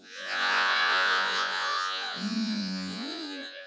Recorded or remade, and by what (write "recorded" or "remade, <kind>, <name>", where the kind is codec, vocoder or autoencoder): remade, vocoder, Vocos